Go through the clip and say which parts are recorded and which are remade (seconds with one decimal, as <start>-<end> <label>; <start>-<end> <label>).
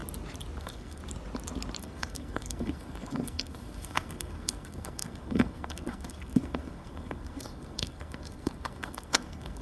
0.0-0.6 recorded; 0.6-1.0 remade; 1.0-1.8 recorded; 1.8-9.6 remade